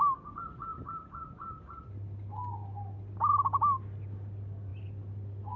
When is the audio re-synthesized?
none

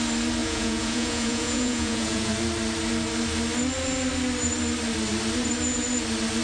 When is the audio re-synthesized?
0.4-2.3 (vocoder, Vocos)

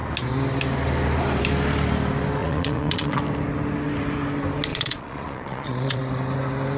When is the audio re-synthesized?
2.4-3.2 (vocoder, Vocos); 4.7-6.0

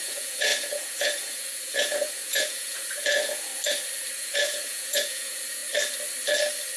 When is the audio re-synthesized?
0.0-3.5 (vocoder, Vocos); 4.1-5.6

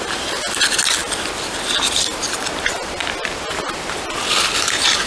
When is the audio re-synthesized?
none

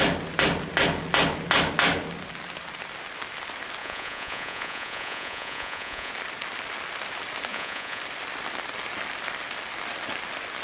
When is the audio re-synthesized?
3.8-6.1 (vocoder, Vocos); 7.5-8.0

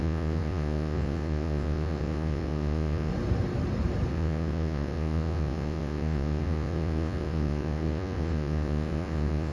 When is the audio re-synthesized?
0.0-3.1 (vocoder, Vocos); 4.1-9.5

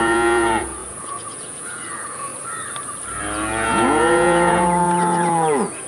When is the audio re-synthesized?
0.0-2.3 (vocoder, Vocos); 3.5-5.9